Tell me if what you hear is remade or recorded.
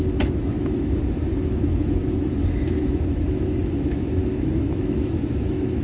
remade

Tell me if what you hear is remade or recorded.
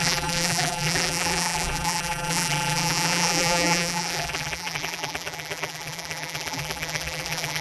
remade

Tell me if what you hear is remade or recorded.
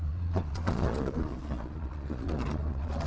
remade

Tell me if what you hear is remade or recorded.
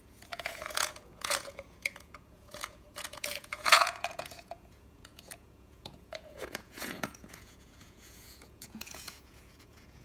remade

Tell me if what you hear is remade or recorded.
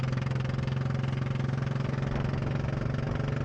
recorded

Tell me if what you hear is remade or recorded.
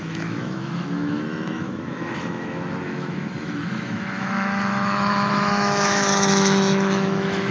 remade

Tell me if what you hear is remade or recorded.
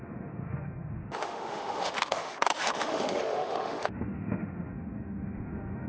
remade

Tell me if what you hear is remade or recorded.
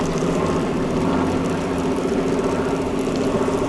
remade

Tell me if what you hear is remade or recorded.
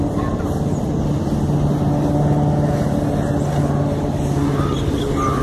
recorded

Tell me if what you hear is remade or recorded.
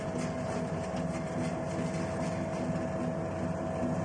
recorded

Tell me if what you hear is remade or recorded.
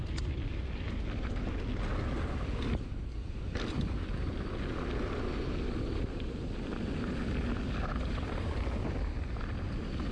recorded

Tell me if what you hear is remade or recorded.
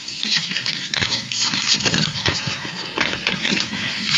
remade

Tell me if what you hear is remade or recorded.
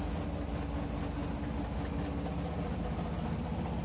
recorded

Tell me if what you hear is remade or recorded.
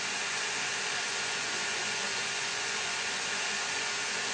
remade